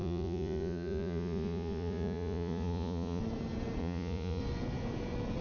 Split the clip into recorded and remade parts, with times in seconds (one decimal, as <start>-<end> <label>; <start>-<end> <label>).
0.0-3.2 remade; 3.2-3.8 recorded; 3.8-4.4 remade; 4.4-5.4 recorded